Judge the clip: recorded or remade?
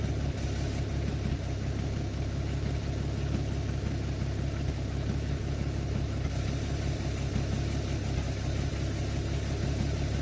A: recorded